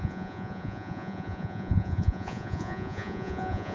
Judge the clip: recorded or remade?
remade